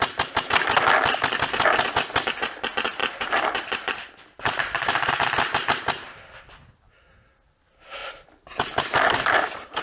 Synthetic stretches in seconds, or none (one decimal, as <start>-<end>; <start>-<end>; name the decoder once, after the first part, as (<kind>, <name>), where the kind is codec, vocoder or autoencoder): 3.0-5.1 (vocoder, BigVGAN v2); 8.0-9.8

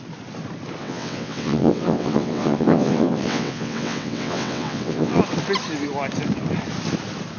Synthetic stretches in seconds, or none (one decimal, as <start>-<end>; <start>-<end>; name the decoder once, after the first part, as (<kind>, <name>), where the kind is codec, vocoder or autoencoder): 0.8-5.2 (vocoder, WaveNeXt)

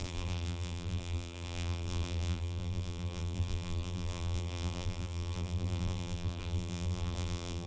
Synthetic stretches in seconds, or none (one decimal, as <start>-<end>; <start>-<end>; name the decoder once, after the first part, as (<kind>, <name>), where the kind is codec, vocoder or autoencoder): 0.0-7.7 (vocoder, BigVGAN v2)

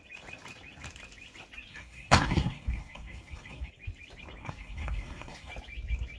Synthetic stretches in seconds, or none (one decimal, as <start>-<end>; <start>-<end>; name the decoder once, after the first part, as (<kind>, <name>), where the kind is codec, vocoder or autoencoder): 1.7-3.7 (codec, SNAC); 4.4-5.5

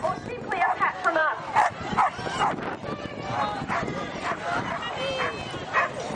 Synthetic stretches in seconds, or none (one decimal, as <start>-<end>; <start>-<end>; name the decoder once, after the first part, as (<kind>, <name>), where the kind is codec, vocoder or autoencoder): none

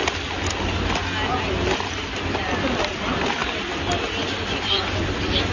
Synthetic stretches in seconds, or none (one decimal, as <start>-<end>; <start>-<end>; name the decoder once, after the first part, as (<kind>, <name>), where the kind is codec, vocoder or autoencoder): none

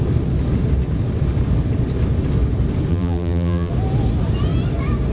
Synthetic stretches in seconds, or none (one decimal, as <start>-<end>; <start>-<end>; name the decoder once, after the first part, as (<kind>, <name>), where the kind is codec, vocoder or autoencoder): 2.9-3.7 (vocoder, BigVGAN v2)

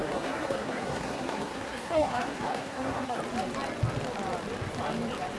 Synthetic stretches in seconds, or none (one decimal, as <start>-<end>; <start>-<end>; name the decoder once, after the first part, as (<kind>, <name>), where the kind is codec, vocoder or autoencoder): 0.0-3.2 (codec, SNAC)